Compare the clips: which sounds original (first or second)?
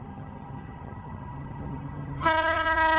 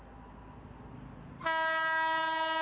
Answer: second